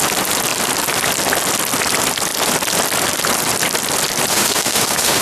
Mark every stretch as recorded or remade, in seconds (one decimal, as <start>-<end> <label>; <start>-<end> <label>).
0.0-4.3 recorded; 4.3-5.2 remade